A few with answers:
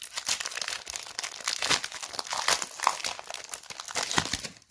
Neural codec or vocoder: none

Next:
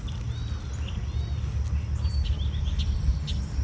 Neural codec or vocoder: none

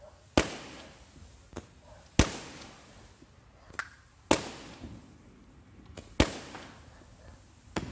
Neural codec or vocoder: none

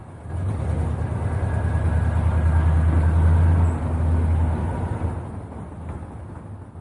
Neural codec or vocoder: none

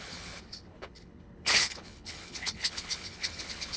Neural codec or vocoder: codec, HILCodec